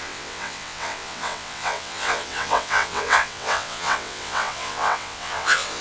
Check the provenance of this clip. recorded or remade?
remade